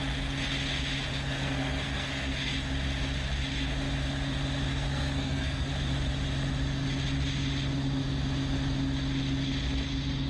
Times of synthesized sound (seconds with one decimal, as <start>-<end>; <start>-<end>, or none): 1.1-2.5; 4.7-5.7